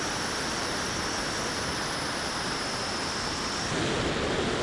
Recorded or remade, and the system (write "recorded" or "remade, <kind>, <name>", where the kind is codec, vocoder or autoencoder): recorded